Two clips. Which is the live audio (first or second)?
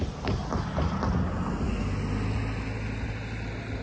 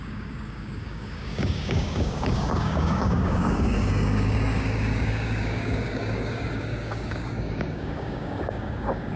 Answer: first